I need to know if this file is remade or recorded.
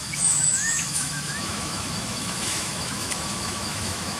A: remade